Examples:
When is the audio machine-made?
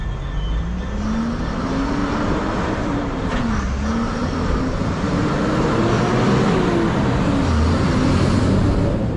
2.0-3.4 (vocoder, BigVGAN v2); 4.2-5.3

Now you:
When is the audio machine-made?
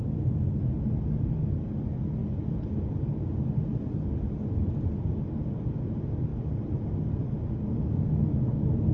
2.2-5.1 (vocoder, BigVGAN v2); 6.3-7.2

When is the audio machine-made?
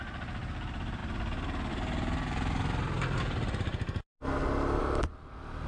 0.0-4.1 (vocoder, BigVGAN v2); 4.8-5.7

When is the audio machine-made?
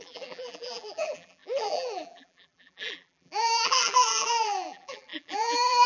0.0-5.9 (vocoder, BigVGAN v2)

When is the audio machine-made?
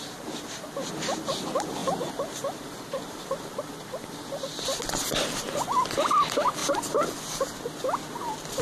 1.8-3.4 (vocoder, BigVGAN v2)